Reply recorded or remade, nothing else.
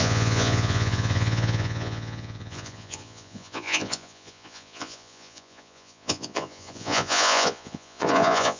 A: remade